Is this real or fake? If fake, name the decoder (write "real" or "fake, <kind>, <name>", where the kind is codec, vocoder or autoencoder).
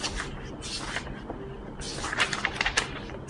real